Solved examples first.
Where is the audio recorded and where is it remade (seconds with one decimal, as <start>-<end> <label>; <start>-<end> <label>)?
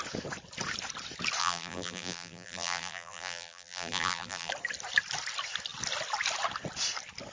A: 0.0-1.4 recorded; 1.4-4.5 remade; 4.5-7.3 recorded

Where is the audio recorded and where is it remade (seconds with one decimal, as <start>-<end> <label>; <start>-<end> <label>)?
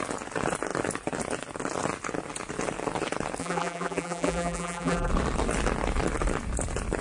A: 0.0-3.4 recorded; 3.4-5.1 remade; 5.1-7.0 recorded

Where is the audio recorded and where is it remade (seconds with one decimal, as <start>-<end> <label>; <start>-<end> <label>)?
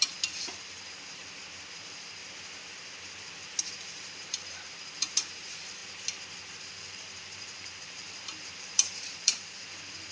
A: 0.0-1.2 remade; 1.2-1.7 recorded; 1.7-2.2 remade; 2.2-3.6 recorded; 3.6-5.8 remade; 5.8-6.6 recorded; 6.6-10.1 remade